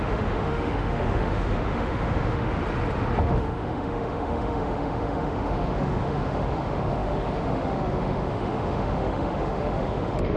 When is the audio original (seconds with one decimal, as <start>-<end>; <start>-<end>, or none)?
2.6-3.2

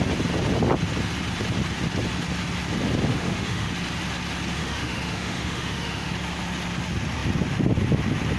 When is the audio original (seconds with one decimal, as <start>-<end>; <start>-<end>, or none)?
0.0-3.1; 3.7-4.6; 6.1-8.4

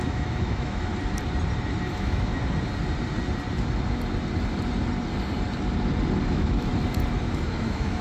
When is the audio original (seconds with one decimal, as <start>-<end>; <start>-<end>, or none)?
0.9-1.8; 2.3-6.3; 6.7-7.2

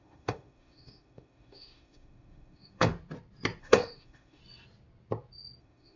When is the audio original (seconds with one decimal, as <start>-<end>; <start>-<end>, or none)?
2.9-3.6; 4.4-5.6

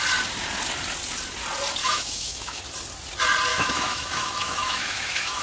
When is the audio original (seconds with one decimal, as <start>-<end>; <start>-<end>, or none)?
0.0-1.8; 2.6-3.5

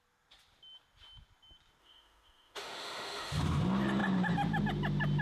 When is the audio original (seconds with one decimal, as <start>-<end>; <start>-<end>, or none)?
0.0-1.8; 3.4-5.2

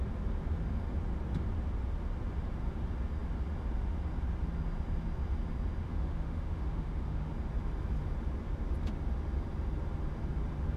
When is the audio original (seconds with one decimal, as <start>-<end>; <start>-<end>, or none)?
0.0-5.8; 7.3-10.8

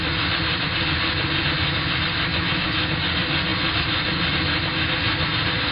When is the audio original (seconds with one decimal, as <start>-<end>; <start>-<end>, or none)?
0.0-2.3; 2.9-5.7